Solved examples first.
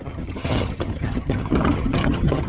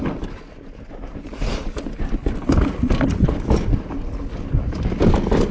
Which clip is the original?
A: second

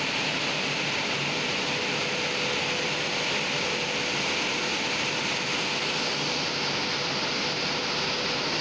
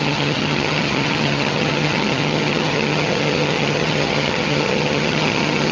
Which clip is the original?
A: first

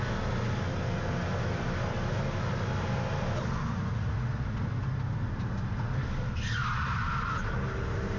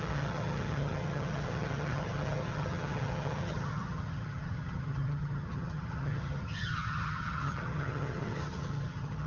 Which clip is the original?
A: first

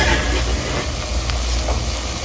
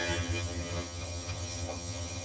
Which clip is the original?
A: first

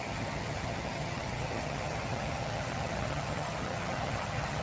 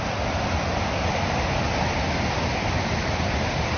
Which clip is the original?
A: second